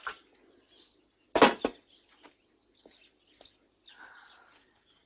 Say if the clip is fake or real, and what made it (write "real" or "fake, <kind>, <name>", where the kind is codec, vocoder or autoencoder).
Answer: real